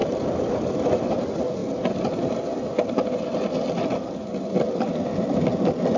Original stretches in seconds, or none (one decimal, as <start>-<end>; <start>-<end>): 0.0-6.0